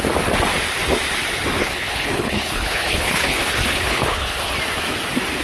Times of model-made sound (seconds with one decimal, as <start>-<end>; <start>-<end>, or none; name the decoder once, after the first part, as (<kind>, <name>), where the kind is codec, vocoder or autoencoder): 1.6-4.5 (codec, HILCodec)